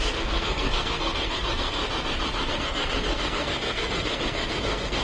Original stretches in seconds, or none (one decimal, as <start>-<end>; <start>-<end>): 1.8-2.5